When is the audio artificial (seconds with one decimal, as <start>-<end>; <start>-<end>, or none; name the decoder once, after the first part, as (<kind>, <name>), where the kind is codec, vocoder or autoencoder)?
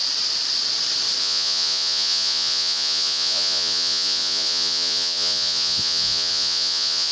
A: 1.2-7.1 (vocoder, Vocos)